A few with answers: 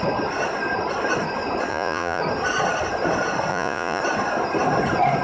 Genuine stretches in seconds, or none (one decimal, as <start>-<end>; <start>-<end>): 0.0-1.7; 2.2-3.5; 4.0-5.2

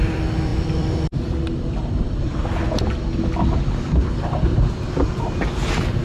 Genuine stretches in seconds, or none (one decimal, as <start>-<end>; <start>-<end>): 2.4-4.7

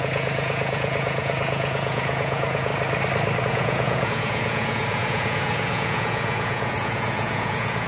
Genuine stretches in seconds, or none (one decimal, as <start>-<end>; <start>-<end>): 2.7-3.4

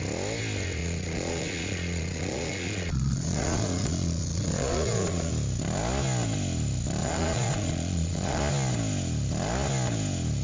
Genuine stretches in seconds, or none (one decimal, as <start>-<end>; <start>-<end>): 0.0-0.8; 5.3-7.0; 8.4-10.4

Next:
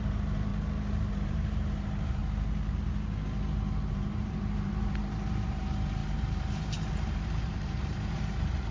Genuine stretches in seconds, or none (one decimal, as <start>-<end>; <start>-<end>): 0.5-1.1; 2.2-3.9

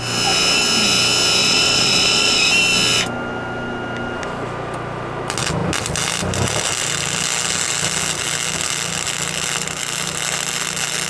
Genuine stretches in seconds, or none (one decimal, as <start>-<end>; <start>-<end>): 0.0-1.4; 2.5-11.1

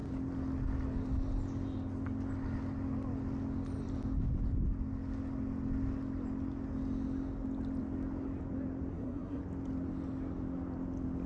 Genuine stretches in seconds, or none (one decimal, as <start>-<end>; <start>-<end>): 0.0-8.9; 9.4-11.3

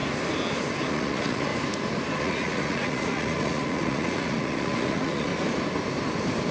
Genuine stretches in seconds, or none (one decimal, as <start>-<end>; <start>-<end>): 0.0-0.9; 1.5-2.2; 5.3-6.5